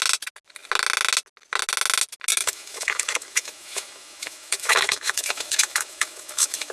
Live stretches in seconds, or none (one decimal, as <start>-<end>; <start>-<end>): 0.0-2.4